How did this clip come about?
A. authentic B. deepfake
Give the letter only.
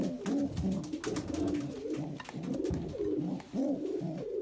A